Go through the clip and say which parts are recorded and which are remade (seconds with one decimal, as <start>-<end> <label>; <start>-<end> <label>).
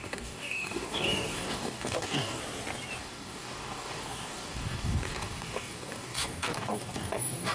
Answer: 0.0-2.4 remade; 2.4-3.0 recorded; 3.0-7.5 remade